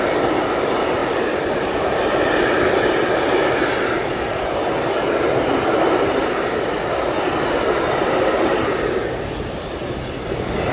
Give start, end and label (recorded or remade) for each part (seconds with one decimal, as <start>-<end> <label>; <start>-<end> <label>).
0.0-10.7 recorded